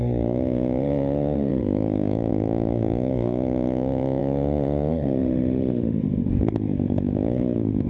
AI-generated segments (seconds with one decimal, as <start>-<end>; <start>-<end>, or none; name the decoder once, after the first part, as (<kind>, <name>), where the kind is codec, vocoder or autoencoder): 0.0-7.9 (autoencoder, DAC-VAE)